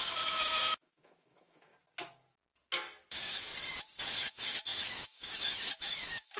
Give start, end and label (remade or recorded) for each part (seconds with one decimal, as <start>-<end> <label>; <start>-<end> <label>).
0.0-1.7 remade; 1.7-3.1 recorded; 3.1-3.5 remade; 3.5-4.1 recorded; 4.1-6.4 remade